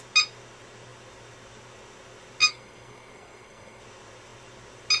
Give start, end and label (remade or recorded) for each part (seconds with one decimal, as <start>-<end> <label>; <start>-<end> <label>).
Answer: 0.0-2.4 recorded; 2.4-3.8 remade; 3.8-5.0 recorded